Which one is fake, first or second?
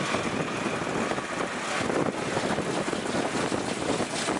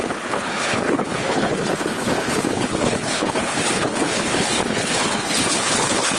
second